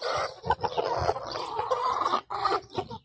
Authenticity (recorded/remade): remade